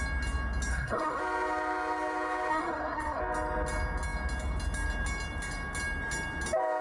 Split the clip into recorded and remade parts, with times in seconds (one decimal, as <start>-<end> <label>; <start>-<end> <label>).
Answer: 0.0-0.7 recorded; 0.7-1.2 remade; 1.2-2.5 recorded; 2.5-3.2 remade; 3.2-6.8 recorded